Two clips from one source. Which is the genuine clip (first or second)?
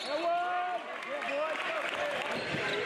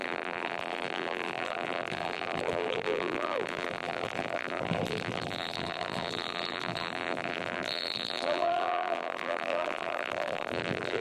first